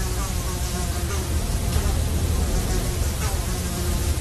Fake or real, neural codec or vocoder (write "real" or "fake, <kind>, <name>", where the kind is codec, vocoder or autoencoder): real